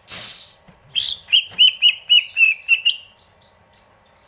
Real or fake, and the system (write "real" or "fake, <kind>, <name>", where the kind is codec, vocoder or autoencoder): fake, vocoder, BigVGAN v2